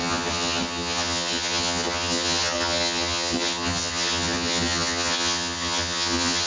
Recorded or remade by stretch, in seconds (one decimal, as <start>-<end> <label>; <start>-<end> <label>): 0.0-6.5 remade